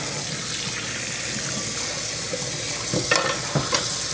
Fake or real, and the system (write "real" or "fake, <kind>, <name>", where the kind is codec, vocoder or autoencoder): real